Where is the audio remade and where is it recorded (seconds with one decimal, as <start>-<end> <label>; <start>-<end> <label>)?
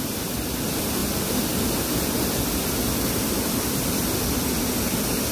0.0-5.3 recorded